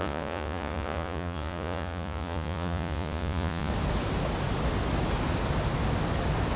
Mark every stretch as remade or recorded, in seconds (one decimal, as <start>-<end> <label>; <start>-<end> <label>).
0.0-3.7 remade; 3.7-6.6 recorded